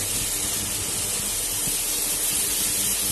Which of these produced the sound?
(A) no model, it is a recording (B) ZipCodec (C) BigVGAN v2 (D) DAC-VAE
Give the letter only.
A